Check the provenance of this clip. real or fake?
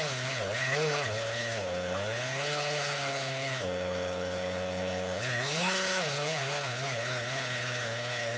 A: fake